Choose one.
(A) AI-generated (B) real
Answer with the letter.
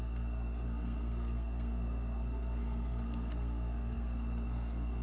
A